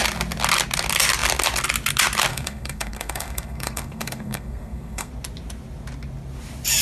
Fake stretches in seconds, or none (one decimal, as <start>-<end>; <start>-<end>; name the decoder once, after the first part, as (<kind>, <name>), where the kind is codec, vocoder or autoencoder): 2.3-5.1 (codec, SNAC)